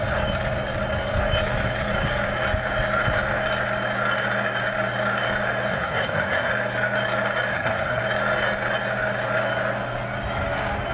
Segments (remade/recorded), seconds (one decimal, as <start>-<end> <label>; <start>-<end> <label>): 0.0-5.7 recorded; 5.7-6.5 remade; 6.5-7.5 recorded; 7.5-8.0 remade; 8.0-10.9 recorded